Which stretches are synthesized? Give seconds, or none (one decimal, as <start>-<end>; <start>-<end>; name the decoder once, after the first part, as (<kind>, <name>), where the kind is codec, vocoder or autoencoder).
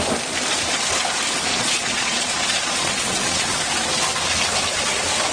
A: 1.5-3.6 (vocoder, Vocos)